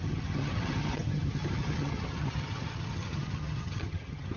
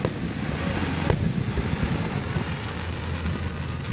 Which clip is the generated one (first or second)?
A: first